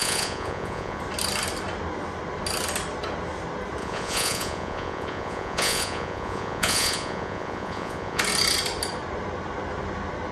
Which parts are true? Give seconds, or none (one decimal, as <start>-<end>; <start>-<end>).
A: 1.0-3.8; 8.2-10.3